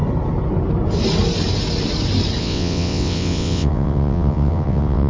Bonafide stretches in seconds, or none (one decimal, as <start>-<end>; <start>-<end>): 0.0-2.4